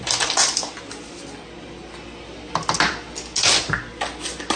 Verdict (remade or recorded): recorded